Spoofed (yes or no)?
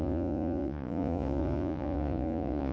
yes